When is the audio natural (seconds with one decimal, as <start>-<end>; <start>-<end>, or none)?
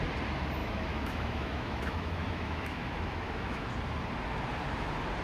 0.0-0.6; 3.7-5.2